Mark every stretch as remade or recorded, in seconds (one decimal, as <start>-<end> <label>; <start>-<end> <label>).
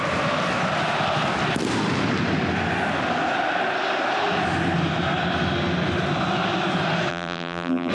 0.0-7.1 recorded; 7.1-7.9 remade